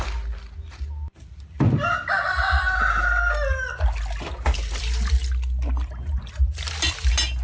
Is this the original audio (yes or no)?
yes